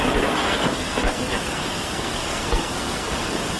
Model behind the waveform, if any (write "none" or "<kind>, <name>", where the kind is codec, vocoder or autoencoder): codec, SNAC